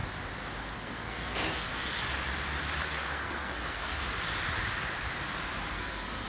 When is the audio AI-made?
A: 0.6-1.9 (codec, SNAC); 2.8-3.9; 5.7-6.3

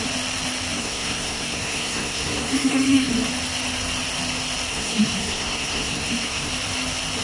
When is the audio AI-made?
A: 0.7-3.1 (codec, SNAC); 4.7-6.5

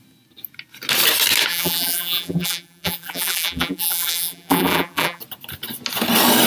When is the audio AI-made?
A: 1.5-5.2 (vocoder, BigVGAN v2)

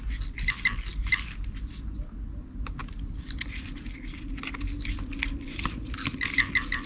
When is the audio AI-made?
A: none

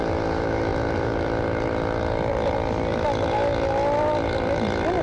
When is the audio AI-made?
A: none